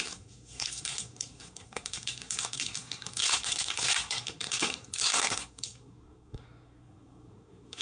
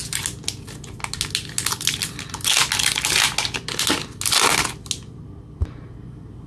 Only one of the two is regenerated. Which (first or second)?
first